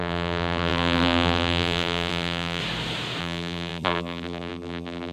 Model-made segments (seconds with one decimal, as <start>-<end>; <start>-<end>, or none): 0.0-2.6; 3.2-5.1